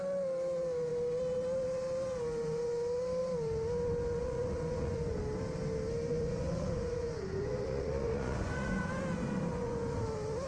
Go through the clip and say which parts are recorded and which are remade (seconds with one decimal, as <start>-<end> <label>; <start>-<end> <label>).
0.0-4.2 recorded; 4.2-5.2 remade; 5.2-6.1 recorded; 6.1-8.8 remade; 8.8-9.5 recorded; 9.5-10.0 remade; 10.0-10.5 recorded